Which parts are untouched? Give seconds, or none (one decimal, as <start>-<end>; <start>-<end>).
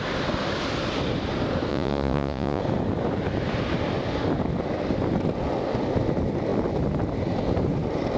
0.0-1.7; 2.6-8.2